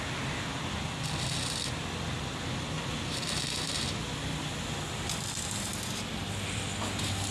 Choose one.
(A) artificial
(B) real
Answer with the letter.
B